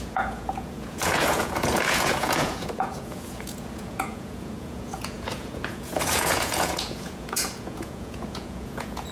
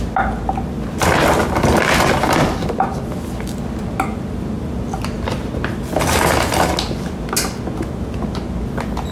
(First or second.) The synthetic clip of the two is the first